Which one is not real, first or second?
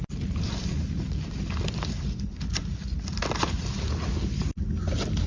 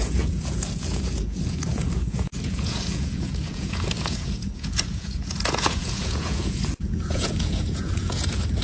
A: second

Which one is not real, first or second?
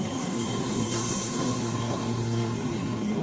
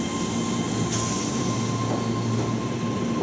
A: first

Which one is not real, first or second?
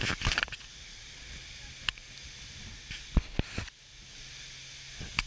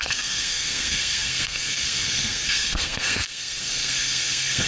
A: second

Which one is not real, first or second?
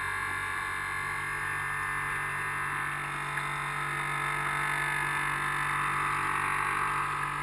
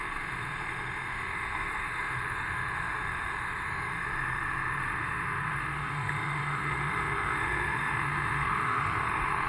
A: second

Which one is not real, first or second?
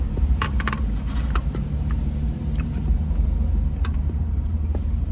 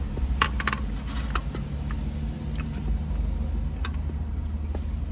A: first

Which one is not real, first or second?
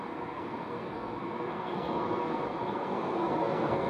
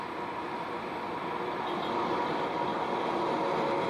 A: first